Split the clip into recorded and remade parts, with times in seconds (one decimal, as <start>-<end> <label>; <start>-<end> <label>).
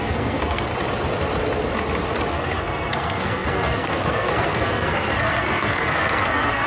0.0-0.7 remade; 0.7-2.3 recorded; 2.3-6.7 remade